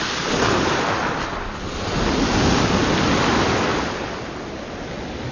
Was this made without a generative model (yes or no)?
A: yes